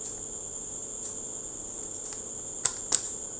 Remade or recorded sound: recorded